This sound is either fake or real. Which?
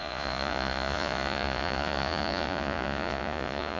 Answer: fake